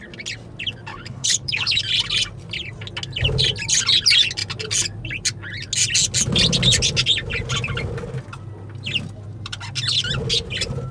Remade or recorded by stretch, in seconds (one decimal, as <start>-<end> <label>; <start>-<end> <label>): 0.0-0.9 recorded; 0.9-1.8 remade; 1.8-10.9 recorded